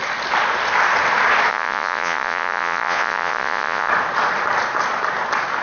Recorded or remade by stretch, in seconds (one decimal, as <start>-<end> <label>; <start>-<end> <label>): 0.0-1.5 recorded; 1.5-3.9 remade; 3.9-5.6 recorded